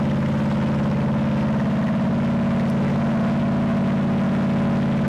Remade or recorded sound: recorded